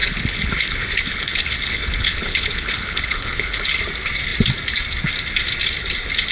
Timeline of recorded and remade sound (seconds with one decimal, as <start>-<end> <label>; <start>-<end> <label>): 0.0-3.8 remade; 3.8-6.3 recorded